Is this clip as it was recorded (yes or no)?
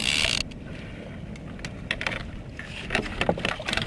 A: yes